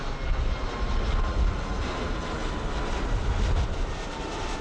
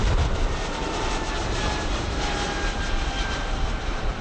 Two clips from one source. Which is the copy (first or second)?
second